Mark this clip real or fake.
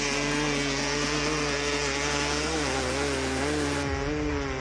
real